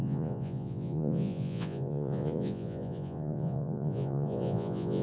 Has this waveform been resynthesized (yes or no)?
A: yes